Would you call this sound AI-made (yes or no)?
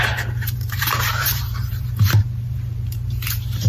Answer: yes